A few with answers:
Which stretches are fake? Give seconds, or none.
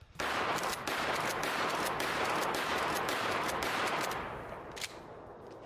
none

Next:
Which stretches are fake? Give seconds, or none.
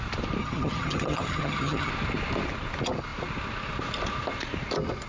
0.4-1.9 (vocoder, HiFi-GAN)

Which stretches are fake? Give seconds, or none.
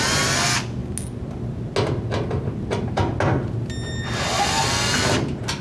none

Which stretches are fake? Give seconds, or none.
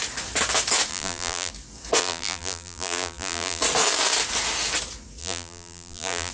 0.9-1.5 (vocoder, BigVGAN v2); 2.0-3.6; 5.2-6.3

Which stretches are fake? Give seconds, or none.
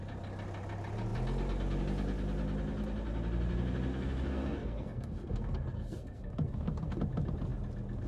3.9-7.0 (codec, SNAC)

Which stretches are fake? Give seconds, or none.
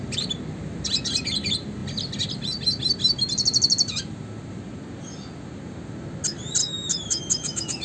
6.6-7.8 (autoencoder, DAC-VAE)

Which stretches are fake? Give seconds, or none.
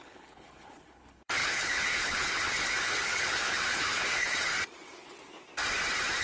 0.0-4.5 (codec, HILCodec)